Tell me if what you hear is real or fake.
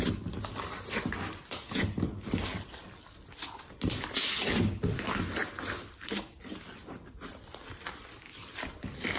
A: real